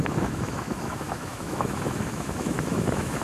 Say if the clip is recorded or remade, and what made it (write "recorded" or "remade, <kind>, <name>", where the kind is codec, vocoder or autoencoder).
remade, autoencoder, DAC-VAE